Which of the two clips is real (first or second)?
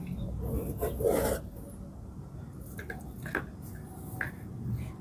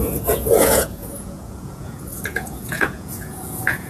first